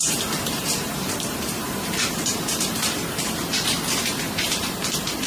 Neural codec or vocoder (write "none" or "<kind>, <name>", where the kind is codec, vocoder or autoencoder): vocoder, BigVGAN v2